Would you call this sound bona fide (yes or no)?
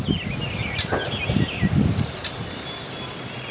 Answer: yes